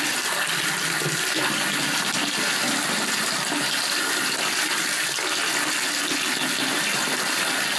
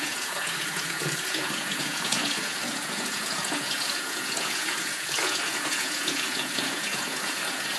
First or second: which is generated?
second